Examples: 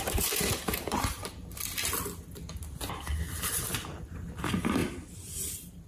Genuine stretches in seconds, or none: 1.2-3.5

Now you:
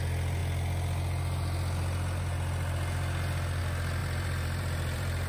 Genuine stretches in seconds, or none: 0.0-4.0

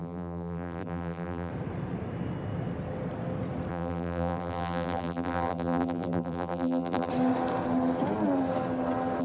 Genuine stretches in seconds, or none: 1.5-3.7; 7.1-9.2

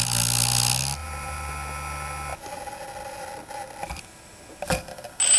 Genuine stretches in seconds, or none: 0.0-1.0; 1.5-5.4

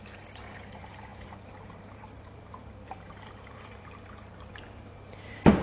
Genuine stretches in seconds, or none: none

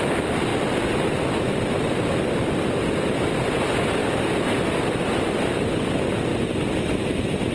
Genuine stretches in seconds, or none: 0.5-1.9; 4.0-5.2

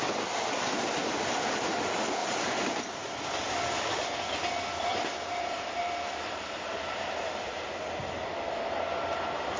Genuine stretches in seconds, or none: 0.0-4.9; 7.8-9.6

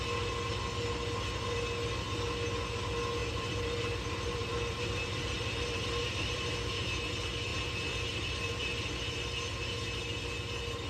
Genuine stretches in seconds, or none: 0.0-3.2; 7.1-7.5; 9.1-10.9